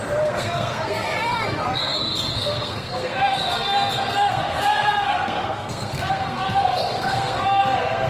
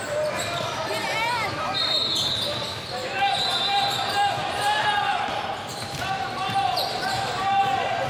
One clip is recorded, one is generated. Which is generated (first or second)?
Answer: first